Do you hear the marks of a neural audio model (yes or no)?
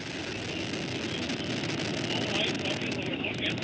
no